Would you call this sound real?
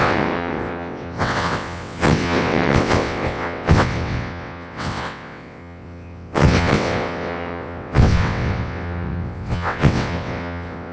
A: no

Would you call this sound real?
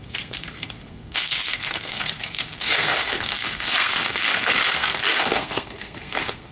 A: no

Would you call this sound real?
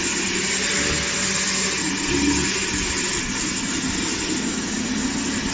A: yes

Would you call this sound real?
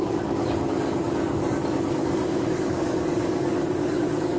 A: no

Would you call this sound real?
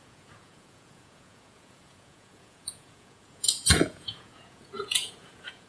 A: no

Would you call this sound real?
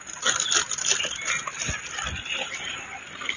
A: yes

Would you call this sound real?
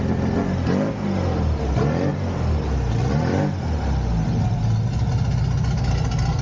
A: yes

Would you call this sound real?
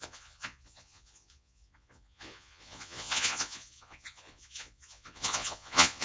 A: no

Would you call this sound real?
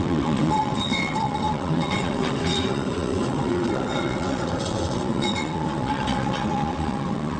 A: no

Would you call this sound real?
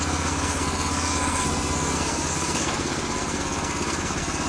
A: no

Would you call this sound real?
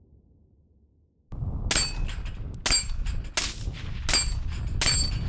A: yes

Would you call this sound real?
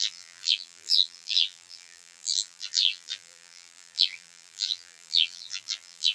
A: no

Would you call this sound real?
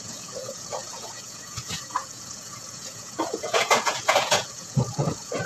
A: no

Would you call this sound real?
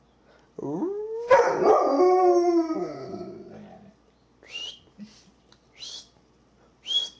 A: yes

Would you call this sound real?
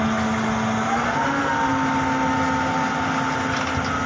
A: yes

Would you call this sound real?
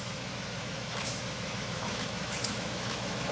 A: no